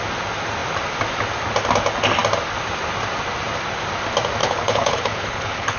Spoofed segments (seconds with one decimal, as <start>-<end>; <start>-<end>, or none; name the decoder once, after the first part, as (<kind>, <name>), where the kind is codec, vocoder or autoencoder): 4.4-5.8 (codec, HILCodec)